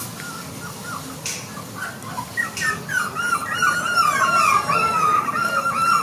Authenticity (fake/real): real